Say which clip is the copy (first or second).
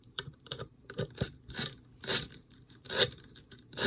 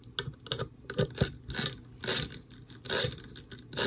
first